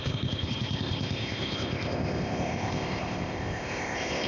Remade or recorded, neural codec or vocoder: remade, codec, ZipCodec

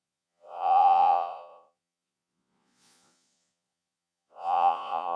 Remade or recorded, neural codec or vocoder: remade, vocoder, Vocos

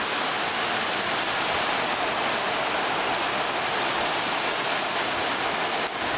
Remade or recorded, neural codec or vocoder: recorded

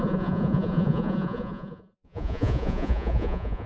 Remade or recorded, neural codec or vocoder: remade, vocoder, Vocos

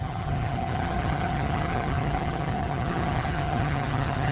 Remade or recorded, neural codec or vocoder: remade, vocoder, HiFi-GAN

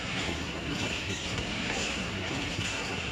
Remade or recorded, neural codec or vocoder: remade, codec, SNAC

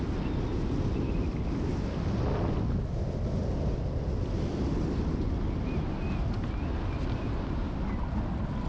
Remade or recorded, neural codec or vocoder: recorded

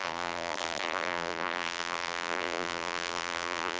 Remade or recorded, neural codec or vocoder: remade, vocoder, BigVGAN v2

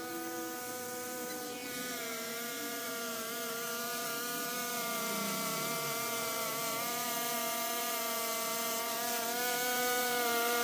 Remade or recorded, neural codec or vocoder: remade, vocoder, BigVGAN v2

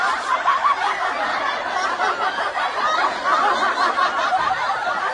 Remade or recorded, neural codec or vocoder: recorded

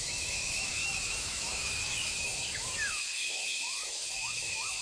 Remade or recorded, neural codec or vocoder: remade, autoencoder, DAC-VAE